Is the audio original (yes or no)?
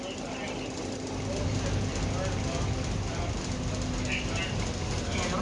yes